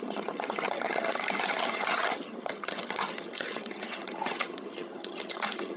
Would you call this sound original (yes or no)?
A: no